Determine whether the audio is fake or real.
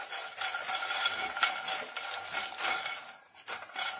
real